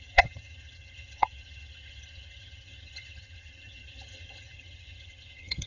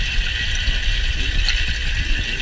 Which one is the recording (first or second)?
second